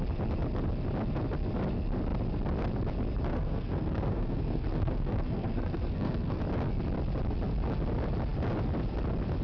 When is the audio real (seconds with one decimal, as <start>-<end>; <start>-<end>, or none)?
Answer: 0.0-3.3; 6.4-9.4